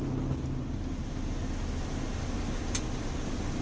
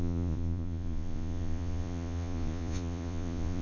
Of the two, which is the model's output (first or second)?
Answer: second